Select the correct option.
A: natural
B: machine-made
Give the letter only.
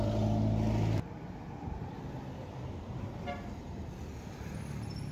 A